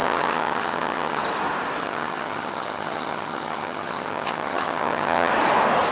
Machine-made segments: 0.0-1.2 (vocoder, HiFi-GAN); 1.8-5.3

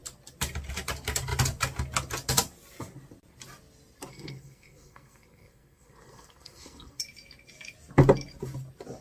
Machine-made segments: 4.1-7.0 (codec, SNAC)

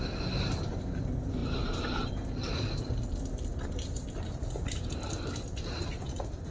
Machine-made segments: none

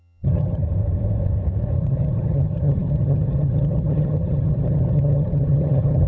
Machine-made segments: 0.0-0.6 (vocoder, HiFi-GAN); 1.8-6.1

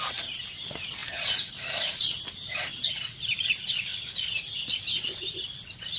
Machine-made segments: none

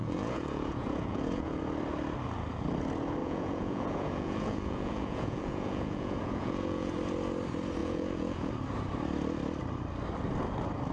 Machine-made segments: 0.0-1.6 (vocoder, Vocos); 3.2-6.9; 7.8-8.5

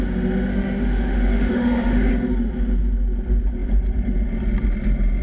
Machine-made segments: 0.5-2.1 (autoencoder, DAC-VAE)

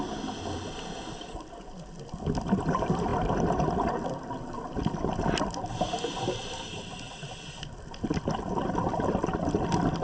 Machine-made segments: none